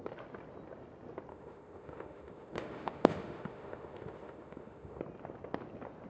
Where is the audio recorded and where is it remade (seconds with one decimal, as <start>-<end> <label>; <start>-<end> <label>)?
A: 0.0-1.3 recorded; 1.3-5.0 remade; 5.0-6.1 recorded